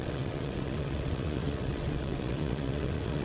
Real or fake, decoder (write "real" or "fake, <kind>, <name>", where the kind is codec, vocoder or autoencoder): fake, vocoder, WaveNeXt